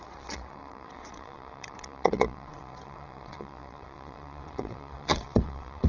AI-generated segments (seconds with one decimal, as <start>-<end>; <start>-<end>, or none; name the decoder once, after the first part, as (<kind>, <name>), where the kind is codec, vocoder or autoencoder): 0.0-5.9 (vocoder, WaveNeXt)